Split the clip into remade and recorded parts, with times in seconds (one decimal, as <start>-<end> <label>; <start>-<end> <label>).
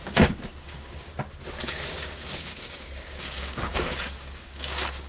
0.0-1.1 remade; 1.1-1.7 recorded; 1.7-5.1 remade